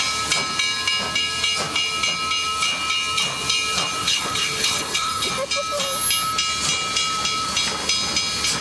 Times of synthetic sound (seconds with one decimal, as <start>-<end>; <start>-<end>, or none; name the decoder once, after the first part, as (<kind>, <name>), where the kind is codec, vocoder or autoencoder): 4.0-5.3 (codec, HILCodec)